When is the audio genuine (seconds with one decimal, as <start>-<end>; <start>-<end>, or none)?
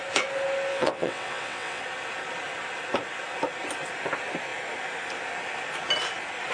0.0-0.7; 1.8-6.5